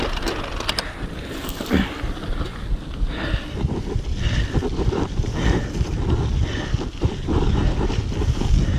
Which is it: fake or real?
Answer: real